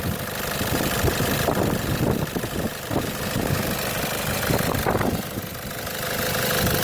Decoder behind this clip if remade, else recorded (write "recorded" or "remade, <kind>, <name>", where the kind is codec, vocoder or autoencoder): recorded